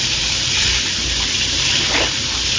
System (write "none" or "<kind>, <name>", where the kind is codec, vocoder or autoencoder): vocoder, BigVGAN v2